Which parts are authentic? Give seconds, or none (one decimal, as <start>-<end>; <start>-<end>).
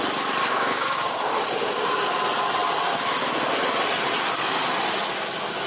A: 0.0-0.4; 2.1-5.7